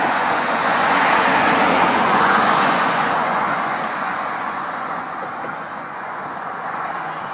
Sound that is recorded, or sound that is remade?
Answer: remade